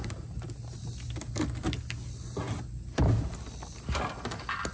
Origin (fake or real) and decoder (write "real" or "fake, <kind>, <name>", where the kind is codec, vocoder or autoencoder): real